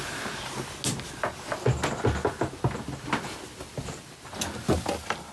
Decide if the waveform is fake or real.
real